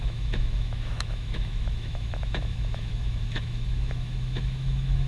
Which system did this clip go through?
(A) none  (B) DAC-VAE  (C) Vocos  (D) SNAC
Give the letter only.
B